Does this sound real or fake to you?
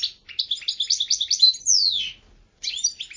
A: real